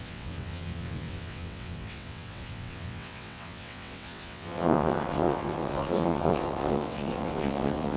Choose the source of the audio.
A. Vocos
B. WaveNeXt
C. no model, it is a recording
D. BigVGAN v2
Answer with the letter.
B